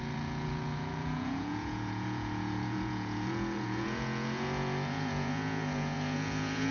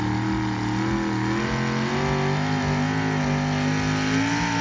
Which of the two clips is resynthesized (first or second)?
first